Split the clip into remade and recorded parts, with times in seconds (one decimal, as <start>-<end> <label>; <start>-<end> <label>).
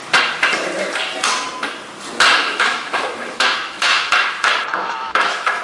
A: 0.0-2.4 recorded; 2.4-4.1 remade; 4.1-4.8 recorded; 4.8-5.6 remade